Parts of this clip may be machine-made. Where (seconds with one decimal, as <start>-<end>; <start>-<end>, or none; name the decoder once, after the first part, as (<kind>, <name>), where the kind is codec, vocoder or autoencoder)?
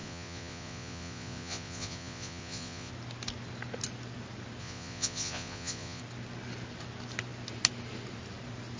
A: 0.0-2.9 (vocoder, Vocos); 4.6-6.0